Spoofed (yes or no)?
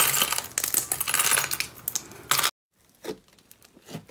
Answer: no